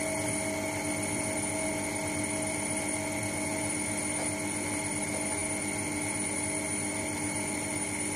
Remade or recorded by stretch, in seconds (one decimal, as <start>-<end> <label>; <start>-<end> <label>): 0.0-8.2 recorded